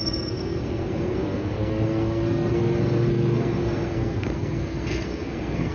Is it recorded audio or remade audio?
remade